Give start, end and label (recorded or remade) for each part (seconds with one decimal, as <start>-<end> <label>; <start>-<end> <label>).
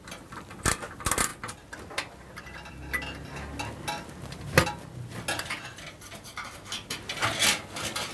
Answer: 0.0-8.1 recorded